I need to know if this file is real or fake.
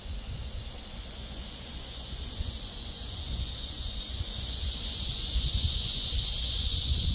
fake